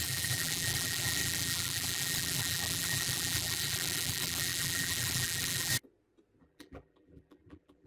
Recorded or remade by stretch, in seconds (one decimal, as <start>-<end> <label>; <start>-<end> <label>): 0.0-5.7 remade; 5.7-6.4 recorded; 6.4-7.9 remade